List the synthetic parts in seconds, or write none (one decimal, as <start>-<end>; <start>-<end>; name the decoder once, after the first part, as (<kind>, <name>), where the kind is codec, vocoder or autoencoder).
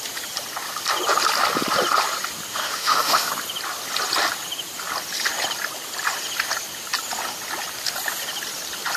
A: 2.5-3.3 (autoencoder, DAC-VAE)